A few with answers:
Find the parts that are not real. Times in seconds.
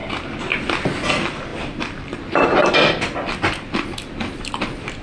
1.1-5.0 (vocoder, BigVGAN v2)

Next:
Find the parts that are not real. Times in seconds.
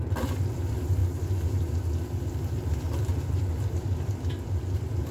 0.0-5.1 (vocoder, BigVGAN v2)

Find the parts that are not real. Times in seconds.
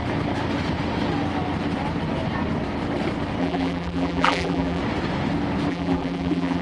3.4-4.8 (vocoder, BigVGAN v2); 5.7-6.6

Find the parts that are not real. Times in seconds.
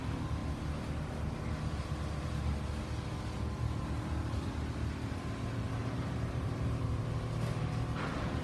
5.8-7.0 (vocoder, BigVGAN v2)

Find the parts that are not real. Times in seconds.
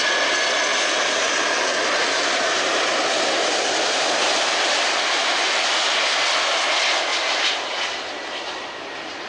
0.7-2.8 (vocoder, BigVGAN v2); 3.4-5.7; 7.1-7.7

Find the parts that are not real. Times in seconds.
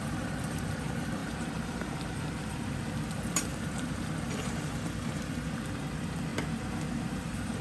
0.0-6.3 (vocoder, BigVGAN v2); 6.9-7.6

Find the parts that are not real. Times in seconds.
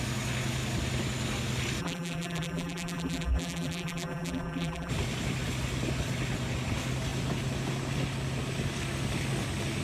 1.8-4.9 (vocoder, BigVGAN v2)